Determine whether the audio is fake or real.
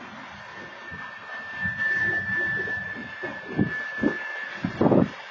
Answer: real